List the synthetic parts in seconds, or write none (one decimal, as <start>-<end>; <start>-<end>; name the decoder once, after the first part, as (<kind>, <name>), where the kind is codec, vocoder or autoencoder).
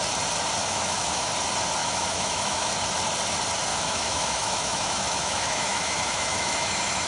0.6-1.3 (autoencoder, DAC-VAE); 1.8-2.7; 3.7-7.1